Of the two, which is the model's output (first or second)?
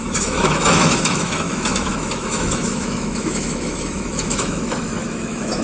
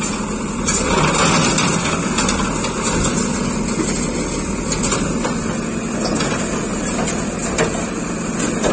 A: first